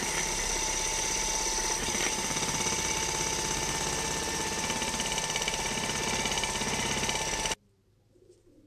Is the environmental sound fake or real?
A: real